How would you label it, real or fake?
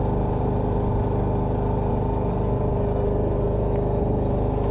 real